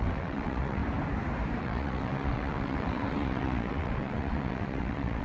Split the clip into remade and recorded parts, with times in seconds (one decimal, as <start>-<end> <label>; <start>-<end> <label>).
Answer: 0.0-0.8 remade; 0.8-1.6 recorded; 1.6-5.2 remade